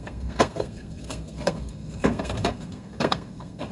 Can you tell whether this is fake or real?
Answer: fake